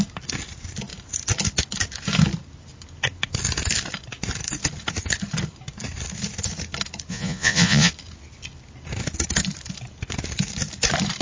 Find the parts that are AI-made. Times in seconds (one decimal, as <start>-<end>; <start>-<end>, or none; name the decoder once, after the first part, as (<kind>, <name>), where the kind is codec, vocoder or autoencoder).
7.1-7.9 (vocoder, Vocos)